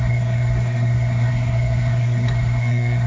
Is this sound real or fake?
fake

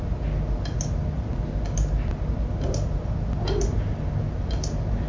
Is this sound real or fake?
real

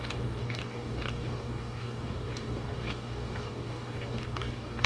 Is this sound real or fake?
fake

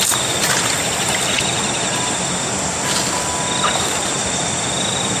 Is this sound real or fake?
real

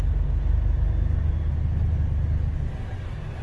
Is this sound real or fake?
real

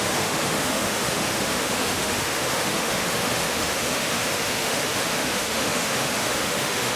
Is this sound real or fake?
fake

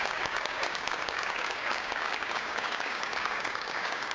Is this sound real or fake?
fake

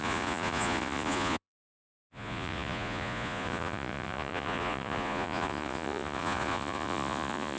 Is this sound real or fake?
fake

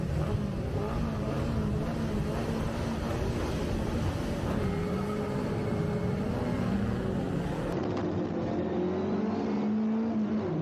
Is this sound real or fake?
real